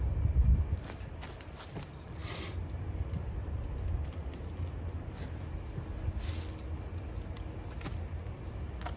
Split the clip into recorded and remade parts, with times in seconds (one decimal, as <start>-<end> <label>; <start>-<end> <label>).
0.0-9.0 recorded